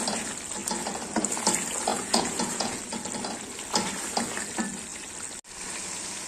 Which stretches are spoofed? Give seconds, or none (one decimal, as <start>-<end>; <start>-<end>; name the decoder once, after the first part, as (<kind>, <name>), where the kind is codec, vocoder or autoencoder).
1.9-2.8 (vocoder, Vocos)